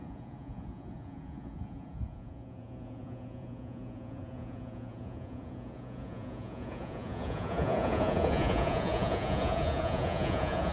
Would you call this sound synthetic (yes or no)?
yes